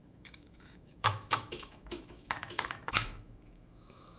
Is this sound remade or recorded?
remade